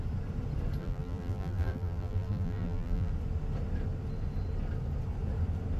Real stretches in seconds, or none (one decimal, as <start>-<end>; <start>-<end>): 0.0-0.8; 3.1-5.8